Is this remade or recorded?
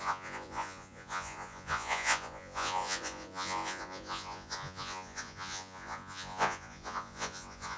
remade